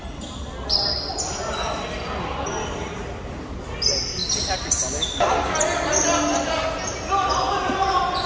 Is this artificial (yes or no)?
no